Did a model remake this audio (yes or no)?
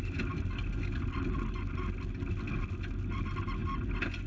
no